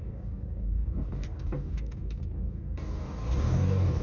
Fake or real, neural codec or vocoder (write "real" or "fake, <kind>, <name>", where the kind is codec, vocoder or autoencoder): fake, codec, DAC